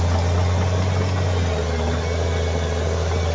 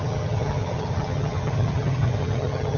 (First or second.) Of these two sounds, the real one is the first